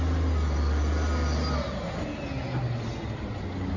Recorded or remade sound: recorded